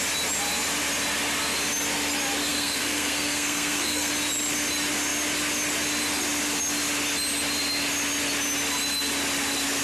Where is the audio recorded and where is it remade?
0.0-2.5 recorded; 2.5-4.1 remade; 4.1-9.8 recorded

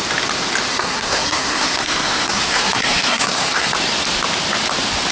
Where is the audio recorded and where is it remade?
0.0-0.7 recorded; 0.7-3.7 remade; 3.7-5.1 recorded

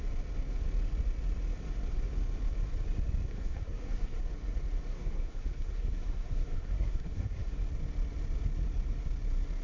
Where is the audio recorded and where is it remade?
0.0-3.3 recorded; 3.3-4.2 remade; 4.2-4.9 recorded; 4.9-7.6 remade; 7.6-9.6 recorded

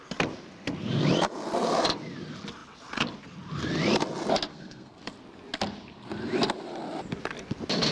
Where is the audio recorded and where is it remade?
0.0-4.5 recorded; 4.5-5.0 remade; 5.0-7.9 recorded